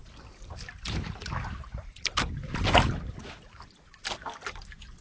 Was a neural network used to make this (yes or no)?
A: no